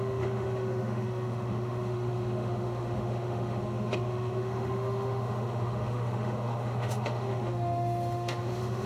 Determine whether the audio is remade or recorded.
remade